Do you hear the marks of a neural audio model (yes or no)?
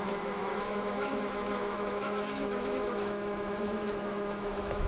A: yes